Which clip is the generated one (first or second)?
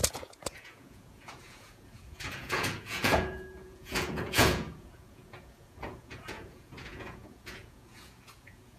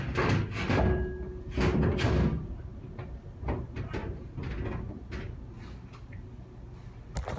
first